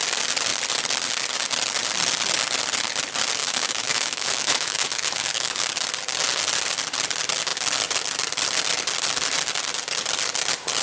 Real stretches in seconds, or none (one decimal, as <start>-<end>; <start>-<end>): 0.0-3.4; 5.7-10.8